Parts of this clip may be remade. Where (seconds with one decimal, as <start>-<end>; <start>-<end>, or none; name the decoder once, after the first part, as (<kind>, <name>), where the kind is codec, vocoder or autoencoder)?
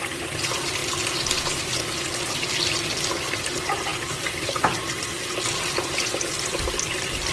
none